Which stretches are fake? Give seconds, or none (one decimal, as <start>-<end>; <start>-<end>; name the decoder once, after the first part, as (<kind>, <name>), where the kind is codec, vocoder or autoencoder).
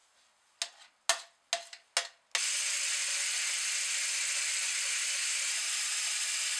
none